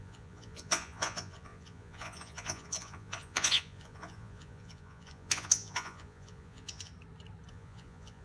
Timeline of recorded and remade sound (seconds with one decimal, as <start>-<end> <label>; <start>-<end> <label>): 0.0-6.9 remade; 6.9-7.5 recorded; 7.5-8.2 remade